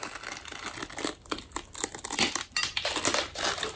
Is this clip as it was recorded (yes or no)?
yes